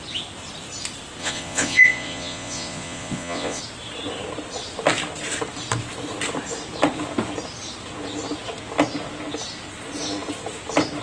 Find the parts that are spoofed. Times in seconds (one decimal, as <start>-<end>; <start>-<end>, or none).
1.2-3.6